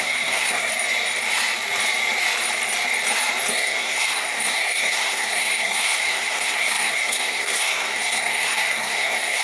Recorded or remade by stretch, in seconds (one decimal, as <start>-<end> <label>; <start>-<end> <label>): 0.0-0.7 remade; 0.7-3.5 recorded; 3.5-9.4 remade